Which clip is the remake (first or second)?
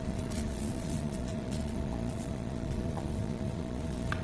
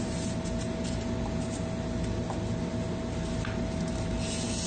first